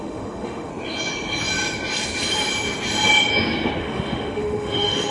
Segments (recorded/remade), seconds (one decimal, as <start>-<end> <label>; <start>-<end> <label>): 0.0-0.7 remade; 0.7-3.8 recorded; 3.8-5.1 remade